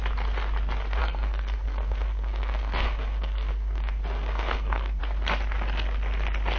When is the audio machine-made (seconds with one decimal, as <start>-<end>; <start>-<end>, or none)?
1.0-5.0